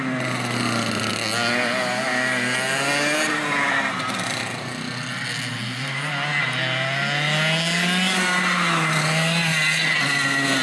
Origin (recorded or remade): recorded